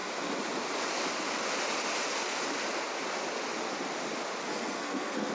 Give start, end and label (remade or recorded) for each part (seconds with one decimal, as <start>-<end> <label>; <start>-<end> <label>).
0.0-4.5 recorded; 4.5-5.3 remade